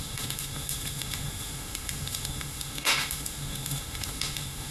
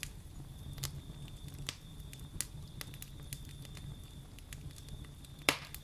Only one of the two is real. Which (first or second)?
second